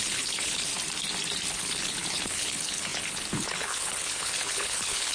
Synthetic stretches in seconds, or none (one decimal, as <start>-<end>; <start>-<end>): 0.0-0.7; 1.5-5.1